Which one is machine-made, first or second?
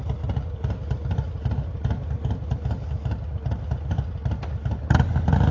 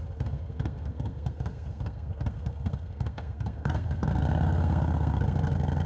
second